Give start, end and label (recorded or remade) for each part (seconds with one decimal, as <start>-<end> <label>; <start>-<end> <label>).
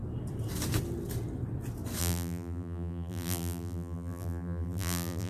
0.0-2.0 recorded; 2.0-5.3 remade